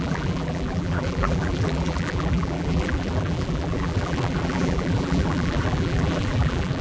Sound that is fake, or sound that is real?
fake